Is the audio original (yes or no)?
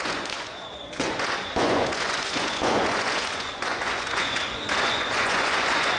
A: no